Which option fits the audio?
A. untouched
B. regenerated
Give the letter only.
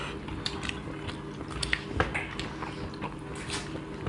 A